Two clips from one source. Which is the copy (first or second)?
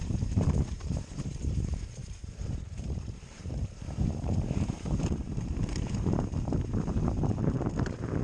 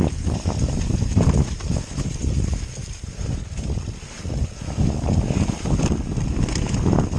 first